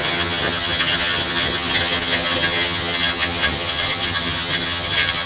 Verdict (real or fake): fake